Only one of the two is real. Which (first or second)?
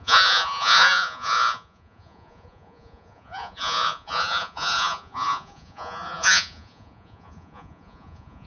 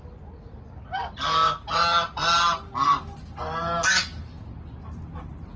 second